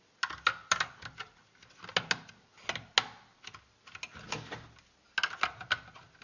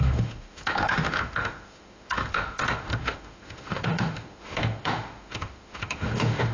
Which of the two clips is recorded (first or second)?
first